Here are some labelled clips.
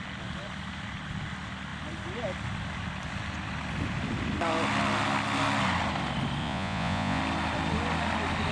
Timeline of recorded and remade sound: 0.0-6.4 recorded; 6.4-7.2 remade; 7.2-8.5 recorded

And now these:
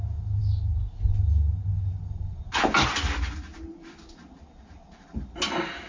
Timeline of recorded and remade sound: 0.0-5.9 recorded

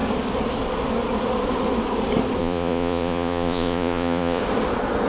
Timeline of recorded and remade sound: 0.0-2.4 recorded; 2.4-4.4 remade; 4.4-5.1 recorded